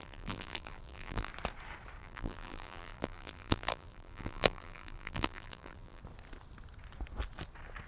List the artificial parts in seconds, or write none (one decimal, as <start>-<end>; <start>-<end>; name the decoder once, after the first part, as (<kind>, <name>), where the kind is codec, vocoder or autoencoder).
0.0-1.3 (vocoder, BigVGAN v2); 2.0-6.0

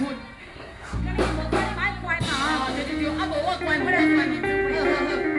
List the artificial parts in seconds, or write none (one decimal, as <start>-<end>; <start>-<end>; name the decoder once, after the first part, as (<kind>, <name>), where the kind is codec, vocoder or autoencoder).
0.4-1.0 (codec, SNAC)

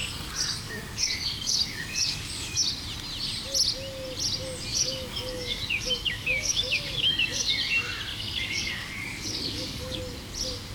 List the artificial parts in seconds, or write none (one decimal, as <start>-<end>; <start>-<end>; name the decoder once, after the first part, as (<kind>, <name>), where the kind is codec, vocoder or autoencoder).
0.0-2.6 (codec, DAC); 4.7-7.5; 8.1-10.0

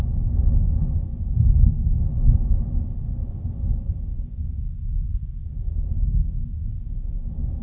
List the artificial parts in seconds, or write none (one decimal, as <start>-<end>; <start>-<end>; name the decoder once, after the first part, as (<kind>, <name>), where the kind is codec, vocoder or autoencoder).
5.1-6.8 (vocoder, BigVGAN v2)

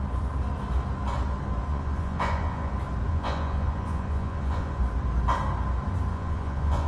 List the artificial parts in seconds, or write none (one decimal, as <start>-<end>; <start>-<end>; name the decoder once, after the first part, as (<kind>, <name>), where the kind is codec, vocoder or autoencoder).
1.7-2.7 (vocoder, Vocos); 3.1-4.8; 6.1-6.9

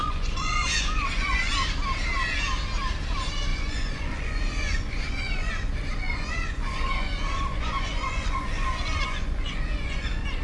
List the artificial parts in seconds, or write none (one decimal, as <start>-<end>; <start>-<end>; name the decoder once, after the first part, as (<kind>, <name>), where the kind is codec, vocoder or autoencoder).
0.0-1.5 (vocoder, Vocos); 3.5-5.5; 5.9-10.4

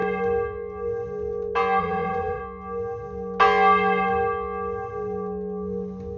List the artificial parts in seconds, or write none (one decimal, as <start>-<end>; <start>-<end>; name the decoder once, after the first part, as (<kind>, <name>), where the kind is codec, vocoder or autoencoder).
1.8-2.4 (vocoder, WaveNeXt)

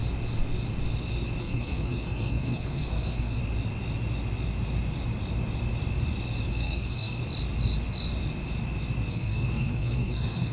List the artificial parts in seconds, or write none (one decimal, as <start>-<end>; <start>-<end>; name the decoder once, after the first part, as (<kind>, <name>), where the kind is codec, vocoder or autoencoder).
1.4-3.4 (codec, SNAC); 6.5-7.2; 9.1-10.5